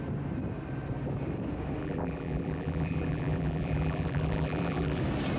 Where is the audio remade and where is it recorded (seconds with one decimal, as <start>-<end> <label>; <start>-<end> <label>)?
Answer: 0.0-1.8 recorded; 1.8-5.0 remade; 5.0-5.4 recorded